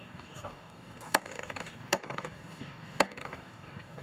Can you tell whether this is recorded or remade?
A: remade